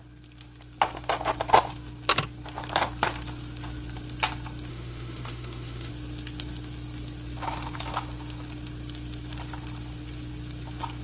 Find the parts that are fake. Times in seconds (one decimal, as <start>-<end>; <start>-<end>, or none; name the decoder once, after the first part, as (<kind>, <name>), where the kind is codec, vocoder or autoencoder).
4.7-5.9 (autoencoder, DAC-VAE)